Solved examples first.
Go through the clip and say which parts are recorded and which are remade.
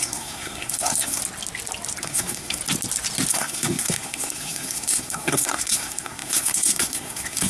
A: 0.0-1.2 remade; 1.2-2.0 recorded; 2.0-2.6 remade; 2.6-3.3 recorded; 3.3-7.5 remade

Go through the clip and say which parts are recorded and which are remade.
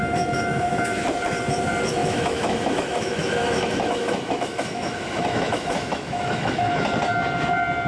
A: 0.0-1.0 remade; 1.0-2.0 recorded; 2.0-6.7 remade; 6.7-7.9 recorded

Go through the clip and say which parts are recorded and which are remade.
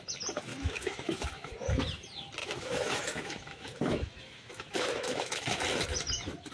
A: 0.0-0.5 recorded; 0.5-1.5 remade; 1.5-2.4 recorded; 2.4-5.6 remade; 5.6-6.5 recorded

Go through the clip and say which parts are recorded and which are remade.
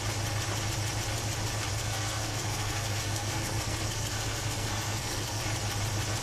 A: 0.0-1.7 recorded; 1.7-5.4 remade; 5.4-6.2 recorded